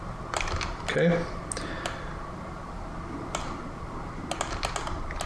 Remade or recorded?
recorded